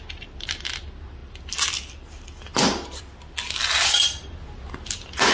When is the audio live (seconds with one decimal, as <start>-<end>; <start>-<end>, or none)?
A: 0.0-5.3